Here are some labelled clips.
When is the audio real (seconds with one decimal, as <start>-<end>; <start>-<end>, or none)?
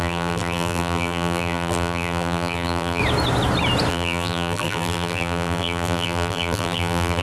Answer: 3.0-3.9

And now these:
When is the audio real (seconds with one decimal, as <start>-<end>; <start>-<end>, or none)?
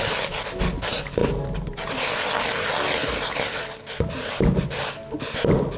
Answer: 0.0-5.8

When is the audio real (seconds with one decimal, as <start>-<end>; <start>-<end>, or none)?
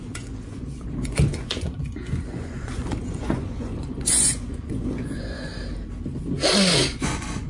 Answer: 5.5-6.5